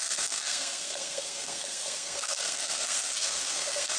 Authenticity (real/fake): fake